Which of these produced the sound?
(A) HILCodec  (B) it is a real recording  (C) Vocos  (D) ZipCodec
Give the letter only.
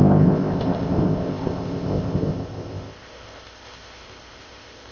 D